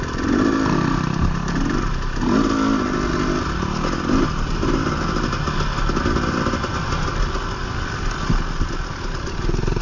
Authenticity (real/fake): real